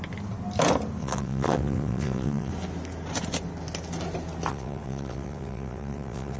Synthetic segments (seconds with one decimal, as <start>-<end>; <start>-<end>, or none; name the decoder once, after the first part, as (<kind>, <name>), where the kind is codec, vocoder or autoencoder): 1.0-2.5 (vocoder, WaveNeXt); 4.5-6.4